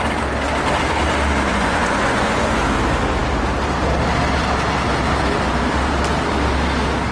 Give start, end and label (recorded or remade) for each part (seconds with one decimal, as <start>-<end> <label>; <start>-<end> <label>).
0.0-1.5 recorded; 1.5-2.6 remade; 2.6-7.1 recorded